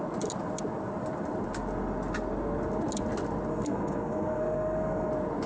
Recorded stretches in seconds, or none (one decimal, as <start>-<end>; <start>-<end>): 0.0-3.5; 5.1-5.5